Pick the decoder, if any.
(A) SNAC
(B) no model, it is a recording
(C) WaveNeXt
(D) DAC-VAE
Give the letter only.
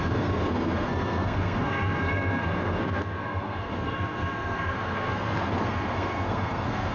A